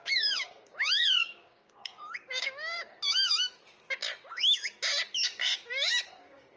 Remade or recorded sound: remade